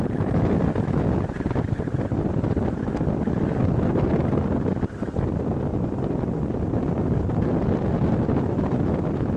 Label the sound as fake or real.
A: real